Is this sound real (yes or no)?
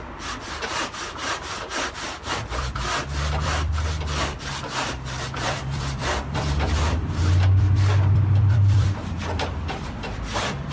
no